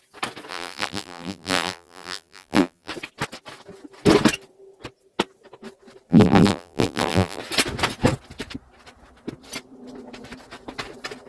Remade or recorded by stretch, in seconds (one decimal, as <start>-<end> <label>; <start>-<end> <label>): 0.0-0.5 recorded; 0.5-2.9 remade; 2.9-6.1 recorded; 6.1-7.4 remade; 7.4-11.3 recorded